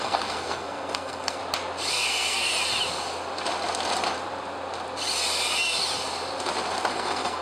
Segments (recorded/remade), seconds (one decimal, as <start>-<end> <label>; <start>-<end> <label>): 0.0-1.4 remade; 1.4-1.9 recorded; 1.9-2.5 remade; 2.5-6.9 recorded; 6.9-7.4 remade